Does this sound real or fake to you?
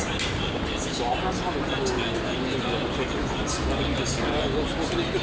real